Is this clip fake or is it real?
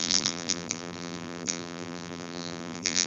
fake